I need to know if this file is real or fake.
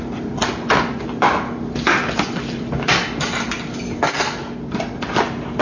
real